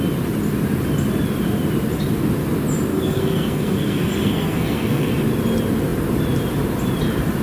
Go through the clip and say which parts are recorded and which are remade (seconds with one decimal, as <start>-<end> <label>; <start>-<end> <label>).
0.0-2.9 recorded; 2.9-5.1 remade; 5.1-7.4 recorded